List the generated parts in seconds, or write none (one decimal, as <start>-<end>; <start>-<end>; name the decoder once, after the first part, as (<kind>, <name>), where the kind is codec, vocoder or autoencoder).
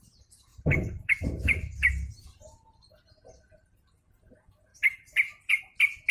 0.5-1.9 (vocoder, BigVGAN v2); 4.7-5.6